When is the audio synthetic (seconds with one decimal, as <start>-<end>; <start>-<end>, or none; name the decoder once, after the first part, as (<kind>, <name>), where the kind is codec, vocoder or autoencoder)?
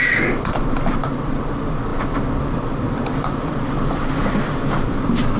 0.0-5.4 (vocoder, BigVGAN v2)